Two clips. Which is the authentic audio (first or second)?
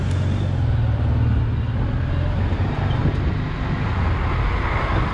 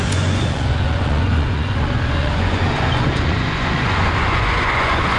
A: first